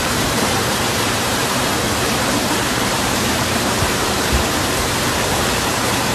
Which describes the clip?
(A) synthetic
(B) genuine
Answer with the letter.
A